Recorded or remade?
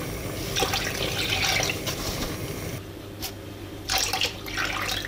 recorded